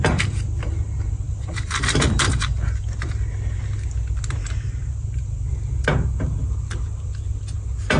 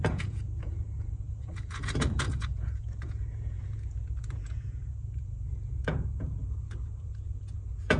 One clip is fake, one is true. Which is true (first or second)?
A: first